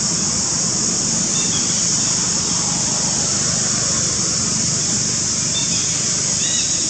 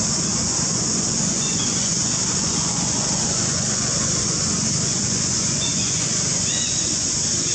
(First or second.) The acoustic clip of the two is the first